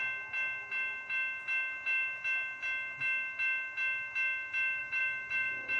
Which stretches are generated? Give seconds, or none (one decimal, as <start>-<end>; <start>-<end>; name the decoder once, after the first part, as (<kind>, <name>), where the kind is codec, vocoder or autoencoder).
4.8-5.8 (vocoder, BigVGAN v2)